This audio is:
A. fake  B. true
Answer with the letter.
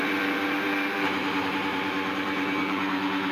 A